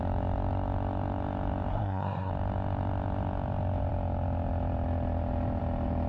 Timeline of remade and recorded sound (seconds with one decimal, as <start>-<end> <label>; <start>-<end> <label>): 0.0-1.7 recorded; 1.7-2.3 remade; 2.3-6.1 recorded